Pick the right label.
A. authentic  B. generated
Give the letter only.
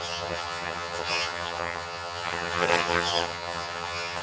B